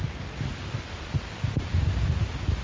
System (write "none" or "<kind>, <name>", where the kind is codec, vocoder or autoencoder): none